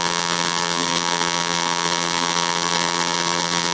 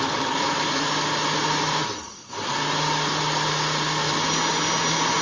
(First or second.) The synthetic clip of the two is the first